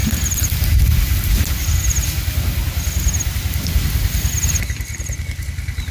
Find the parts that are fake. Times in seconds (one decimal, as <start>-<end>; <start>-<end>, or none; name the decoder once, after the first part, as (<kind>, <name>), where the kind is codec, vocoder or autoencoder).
none

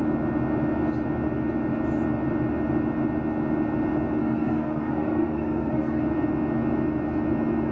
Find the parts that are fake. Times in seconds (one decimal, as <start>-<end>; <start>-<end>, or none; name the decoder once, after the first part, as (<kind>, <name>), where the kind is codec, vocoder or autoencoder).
4.2-6.0 (codec, SNAC)

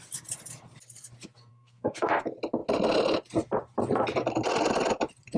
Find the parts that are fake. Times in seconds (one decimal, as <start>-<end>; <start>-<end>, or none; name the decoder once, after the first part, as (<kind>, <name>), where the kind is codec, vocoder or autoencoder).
1.5-2.2 (codec, SNAC)

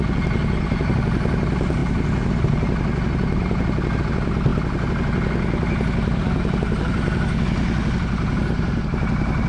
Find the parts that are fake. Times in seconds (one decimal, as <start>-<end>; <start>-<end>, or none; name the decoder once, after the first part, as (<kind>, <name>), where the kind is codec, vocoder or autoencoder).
none

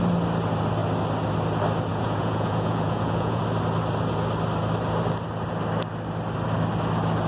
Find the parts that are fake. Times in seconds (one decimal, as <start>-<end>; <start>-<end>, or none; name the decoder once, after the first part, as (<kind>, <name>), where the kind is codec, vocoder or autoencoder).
1.9-3.4 (vocoder, Vocos)

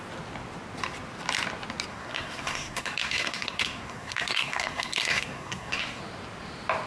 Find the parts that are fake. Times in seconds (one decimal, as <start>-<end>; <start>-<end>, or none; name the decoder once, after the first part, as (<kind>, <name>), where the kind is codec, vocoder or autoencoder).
1.9-6.0 (codec, SNAC)

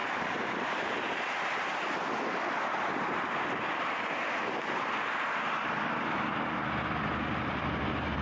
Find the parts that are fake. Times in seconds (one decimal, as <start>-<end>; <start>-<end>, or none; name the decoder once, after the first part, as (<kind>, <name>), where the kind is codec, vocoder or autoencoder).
0.0-1.9 (vocoder, BigVGAN v2)